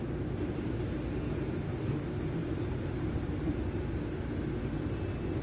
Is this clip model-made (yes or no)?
no